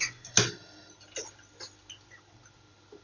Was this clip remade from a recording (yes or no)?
no